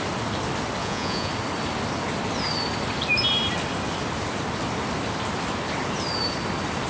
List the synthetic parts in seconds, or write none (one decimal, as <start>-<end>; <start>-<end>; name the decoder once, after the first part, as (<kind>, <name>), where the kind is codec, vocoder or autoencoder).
0.8-1.3 (vocoder, Vocos)